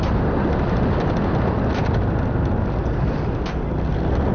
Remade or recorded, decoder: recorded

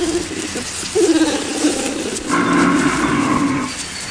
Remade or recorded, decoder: recorded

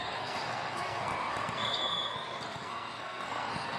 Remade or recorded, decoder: remade, codec, SNAC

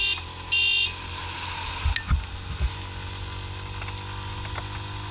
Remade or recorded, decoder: recorded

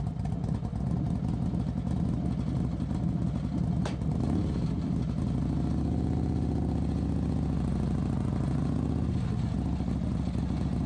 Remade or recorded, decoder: recorded